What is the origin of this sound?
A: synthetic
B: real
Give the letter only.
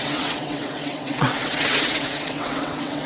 A